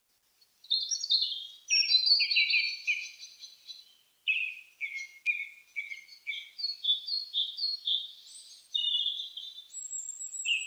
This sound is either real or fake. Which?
real